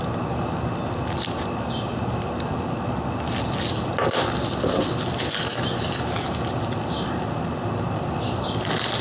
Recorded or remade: recorded